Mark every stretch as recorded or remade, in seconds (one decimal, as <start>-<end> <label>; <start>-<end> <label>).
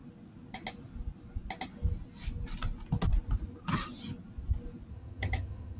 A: 0.0-4.9 recorded; 4.9-5.8 remade